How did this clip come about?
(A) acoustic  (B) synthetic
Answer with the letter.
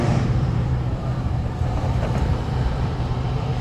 B